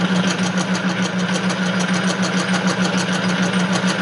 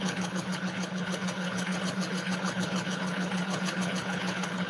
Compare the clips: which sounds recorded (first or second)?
first